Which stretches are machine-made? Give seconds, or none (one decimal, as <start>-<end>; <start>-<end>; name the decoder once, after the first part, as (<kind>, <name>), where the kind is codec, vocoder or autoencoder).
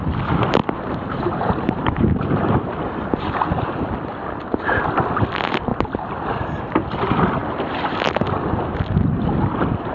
0.6-3.8 (vocoder, BigVGAN v2)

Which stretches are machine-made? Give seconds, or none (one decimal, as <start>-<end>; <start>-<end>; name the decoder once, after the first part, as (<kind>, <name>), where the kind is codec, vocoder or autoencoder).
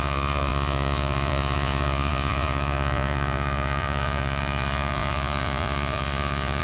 0.0-6.6 (vocoder, Vocos)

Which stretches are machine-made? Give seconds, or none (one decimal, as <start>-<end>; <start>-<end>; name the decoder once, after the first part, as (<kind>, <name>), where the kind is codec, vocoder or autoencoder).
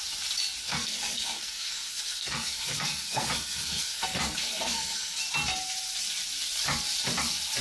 0.6-5.2 (codec, SNAC)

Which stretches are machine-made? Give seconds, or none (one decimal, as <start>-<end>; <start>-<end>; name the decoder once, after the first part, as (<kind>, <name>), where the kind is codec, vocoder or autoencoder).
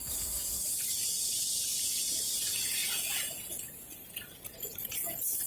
0.0-5.5 (vocoder, Vocos)